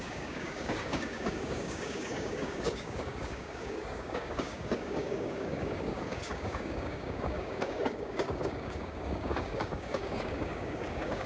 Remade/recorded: remade